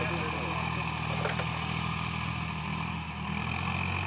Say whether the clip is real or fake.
real